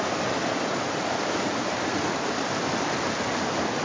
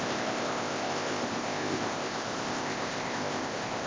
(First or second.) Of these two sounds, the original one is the first